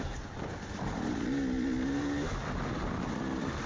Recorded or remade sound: recorded